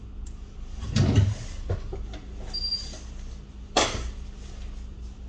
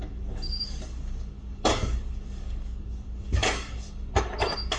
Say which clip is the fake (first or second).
second